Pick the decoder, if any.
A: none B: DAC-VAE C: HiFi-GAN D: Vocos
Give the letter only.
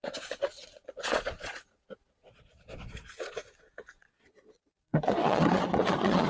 D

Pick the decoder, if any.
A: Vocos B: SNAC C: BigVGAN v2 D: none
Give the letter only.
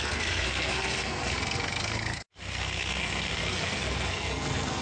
B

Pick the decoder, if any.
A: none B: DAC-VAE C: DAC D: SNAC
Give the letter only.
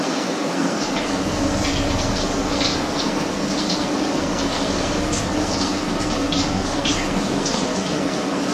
D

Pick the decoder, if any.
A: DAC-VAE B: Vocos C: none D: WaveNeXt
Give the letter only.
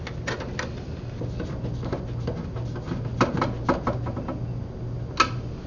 C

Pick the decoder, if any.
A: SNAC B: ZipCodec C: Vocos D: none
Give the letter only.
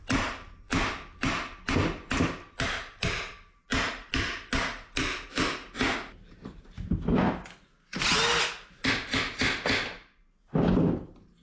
D